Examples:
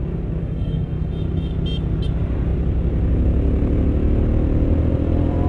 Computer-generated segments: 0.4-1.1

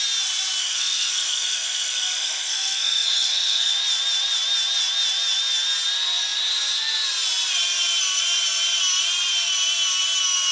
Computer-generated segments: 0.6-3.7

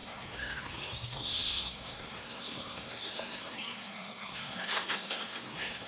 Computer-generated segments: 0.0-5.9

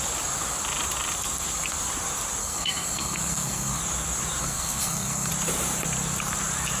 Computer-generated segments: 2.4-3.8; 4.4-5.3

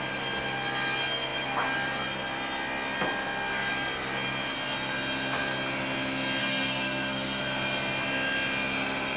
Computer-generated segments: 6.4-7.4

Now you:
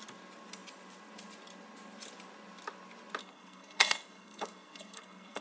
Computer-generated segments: 3.2-5.4

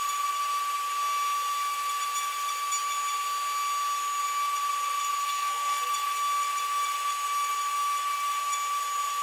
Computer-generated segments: 5.2-5.9

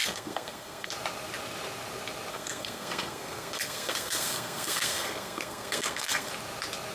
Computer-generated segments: 0.0-0.9; 2.3-6.3